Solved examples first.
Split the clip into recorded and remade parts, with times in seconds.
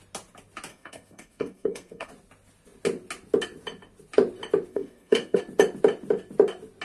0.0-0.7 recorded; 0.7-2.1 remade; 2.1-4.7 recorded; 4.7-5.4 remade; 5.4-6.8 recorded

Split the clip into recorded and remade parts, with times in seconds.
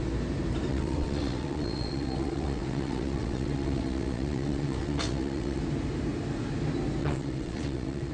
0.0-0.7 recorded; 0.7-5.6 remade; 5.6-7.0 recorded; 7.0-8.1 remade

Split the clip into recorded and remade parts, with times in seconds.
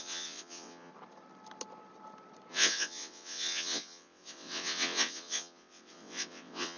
0.0-0.9 remade; 0.9-2.5 recorded; 2.5-6.8 remade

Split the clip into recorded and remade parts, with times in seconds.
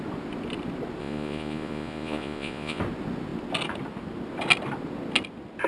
0.0-1.0 recorded; 1.0-2.8 remade; 2.8-5.7 recorded